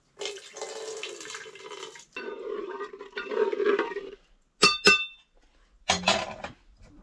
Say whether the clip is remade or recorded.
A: recorded